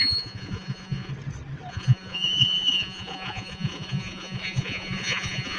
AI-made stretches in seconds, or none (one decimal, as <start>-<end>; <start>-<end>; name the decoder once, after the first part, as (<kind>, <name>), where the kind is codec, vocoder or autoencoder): 0.0-1.1 (vocoder, Vocos); 1.7-5.6